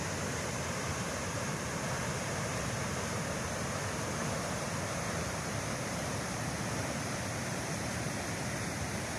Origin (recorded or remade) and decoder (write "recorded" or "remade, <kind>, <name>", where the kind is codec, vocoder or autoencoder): remade, vocoder, BigVGAN v2